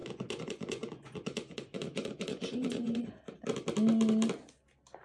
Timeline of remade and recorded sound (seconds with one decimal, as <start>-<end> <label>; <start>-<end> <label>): 0.0-3.0 remade; 3.0-5.0 recorded